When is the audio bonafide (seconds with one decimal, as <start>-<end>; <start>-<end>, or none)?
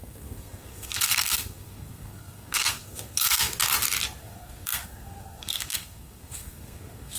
3.5-4.2